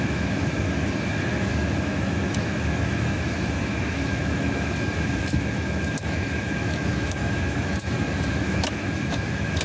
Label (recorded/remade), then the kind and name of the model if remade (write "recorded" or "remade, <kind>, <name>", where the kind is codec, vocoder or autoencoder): remade, autoencoder, DAC-VAE